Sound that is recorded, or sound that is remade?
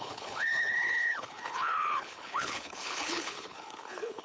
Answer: remade